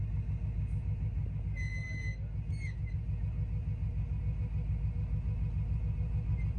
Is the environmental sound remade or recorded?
recorded